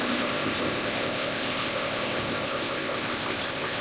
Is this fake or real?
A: fake